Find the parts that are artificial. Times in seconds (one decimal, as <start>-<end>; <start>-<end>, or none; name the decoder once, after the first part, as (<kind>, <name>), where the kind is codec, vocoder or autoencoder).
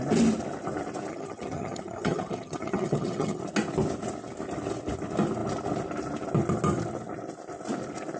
1.1-3.4 (vocoder, HiFi-GAN)